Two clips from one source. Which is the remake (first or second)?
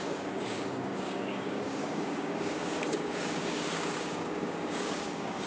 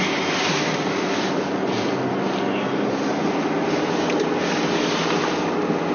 first